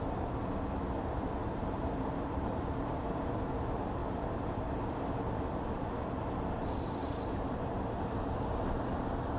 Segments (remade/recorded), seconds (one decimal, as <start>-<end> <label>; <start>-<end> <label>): 0.0-1.4 recorded; 1.4-3.5 remade; 3.5-4.0 recorded; 4.0-4.9 remade; 4.9-7.0 recorded; 7.0-8.0 remade; 8.0-9.4 recorded